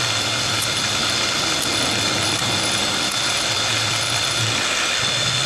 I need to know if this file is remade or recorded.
recorded